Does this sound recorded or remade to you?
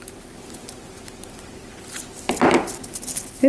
recorded